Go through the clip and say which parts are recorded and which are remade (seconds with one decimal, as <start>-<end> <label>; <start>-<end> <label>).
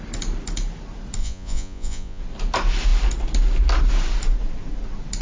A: 0.0-1.2 recorded; 1.2-2.2 remade; 2.2-5.2 recorded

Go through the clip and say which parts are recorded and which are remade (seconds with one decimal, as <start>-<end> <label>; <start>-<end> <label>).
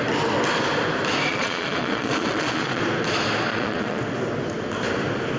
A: 0.0-1.3 recorded; 1.3-2.8 remade; 2.8-3.5 recorded; 3.5-4.0 remade; 4.0-5.4 recorded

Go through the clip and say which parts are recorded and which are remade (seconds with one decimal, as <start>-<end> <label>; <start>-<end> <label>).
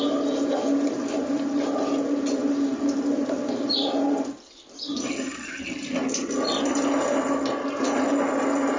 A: 0.0-8.8 recorded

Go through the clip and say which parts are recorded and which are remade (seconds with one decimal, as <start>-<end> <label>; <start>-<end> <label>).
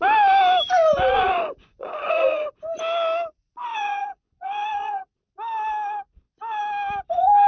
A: 0.0-1.1 recorded; 1.1-2.5 remade; 2.5-3.6 recorded; 3.6-5.0 remade; 5.0-7.5 recorded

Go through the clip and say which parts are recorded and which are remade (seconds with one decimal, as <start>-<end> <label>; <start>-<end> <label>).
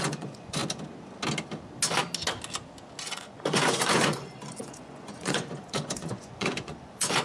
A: 0.0-0.6 remade; 0.6-3.0 recorded; 3.0-7.2 remade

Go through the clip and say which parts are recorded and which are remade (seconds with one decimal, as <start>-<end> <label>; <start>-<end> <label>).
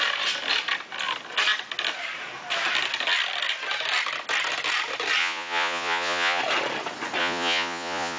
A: 0.0-5.2 recorded; 5.2-6.4 remade; 6.4-7.2 recorded; 7.2-8.2 remade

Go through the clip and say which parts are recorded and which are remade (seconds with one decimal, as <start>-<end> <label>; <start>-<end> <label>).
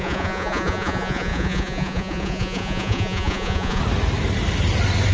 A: 0.0-3.8 remade; 3.8-5.1 recorded